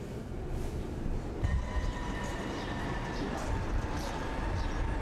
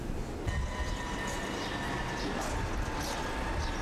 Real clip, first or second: second